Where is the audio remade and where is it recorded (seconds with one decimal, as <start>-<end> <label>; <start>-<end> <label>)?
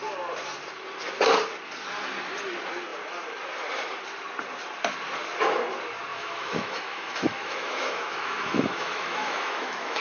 0.0-6.1 recorded; 6.1-10.0 remade